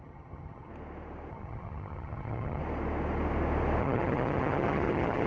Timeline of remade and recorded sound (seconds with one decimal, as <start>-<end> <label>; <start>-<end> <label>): 0.0-0.7 remade; 0.7-1.3 recorded; 1.3-2.6 remade; 2.6-3.8 recorded; 3.8-5.3 remade

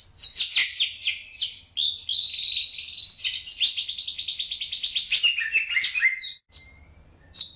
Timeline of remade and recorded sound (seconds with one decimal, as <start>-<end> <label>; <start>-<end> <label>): 0.0-7.6 recorded

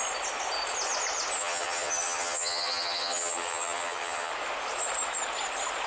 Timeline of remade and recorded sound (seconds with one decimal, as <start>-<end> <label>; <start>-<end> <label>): 0.0-1.4 recorded; 1.4-4.3 remade; 4.3-5.9 recorded

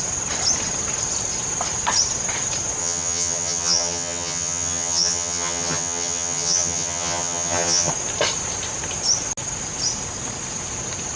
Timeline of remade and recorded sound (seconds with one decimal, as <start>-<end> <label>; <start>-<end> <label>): 0.0-2.8 recorded; 2.8-7.9 remade; 7.9-11.2 recorded